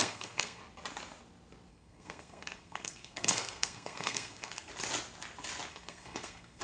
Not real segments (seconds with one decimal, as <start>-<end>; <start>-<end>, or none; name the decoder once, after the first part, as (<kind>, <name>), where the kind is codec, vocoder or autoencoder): 0.0-0.6 (codec, SNAC); 1.7-4.7; 5.7-6.6